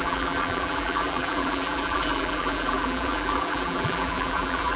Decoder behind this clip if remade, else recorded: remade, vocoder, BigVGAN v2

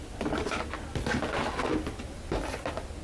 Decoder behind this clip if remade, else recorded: recorded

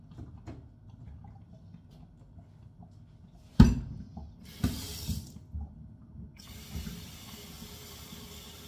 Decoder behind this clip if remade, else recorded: recorded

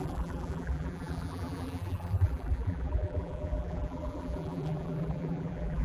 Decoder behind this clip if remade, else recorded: remade, vocoder, BigVGAN v2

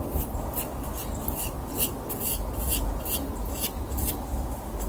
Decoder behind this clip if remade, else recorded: recorded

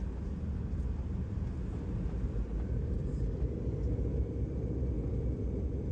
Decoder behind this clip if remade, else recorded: recorded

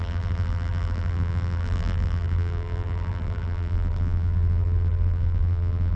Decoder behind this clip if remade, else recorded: remade, vocoder, BigVGAN v2